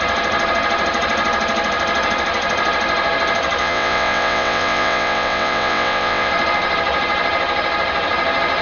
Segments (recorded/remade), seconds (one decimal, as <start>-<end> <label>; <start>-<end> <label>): 0.0-3.6 recorded; 3.6-6.3 remade; 6.3-8.6 recorded